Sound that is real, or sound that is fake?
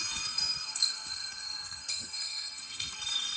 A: fake